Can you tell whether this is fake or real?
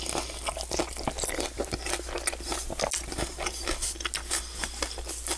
real